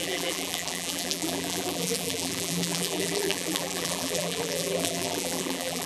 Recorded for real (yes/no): no